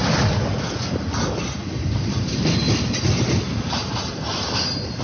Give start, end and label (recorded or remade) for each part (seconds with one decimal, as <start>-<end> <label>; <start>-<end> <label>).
0.0-0.7 remade; 0.7-1.6 recorded; 1.6-3.4 remade; 3.4-5.0 recorded